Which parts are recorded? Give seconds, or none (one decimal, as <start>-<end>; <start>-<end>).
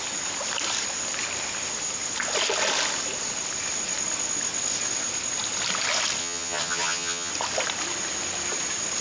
0.0-6.2; 7.3-9.0